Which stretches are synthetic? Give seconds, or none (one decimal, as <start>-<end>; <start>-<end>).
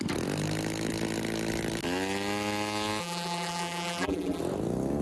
3.0-4.4